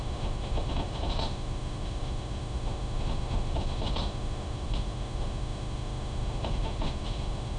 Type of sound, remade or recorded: remade